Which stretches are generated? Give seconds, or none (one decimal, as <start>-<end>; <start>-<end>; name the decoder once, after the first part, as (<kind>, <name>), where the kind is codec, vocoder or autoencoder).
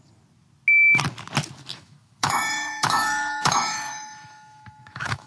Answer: 1.7-5.3 (autoencoder, DAC-VAE)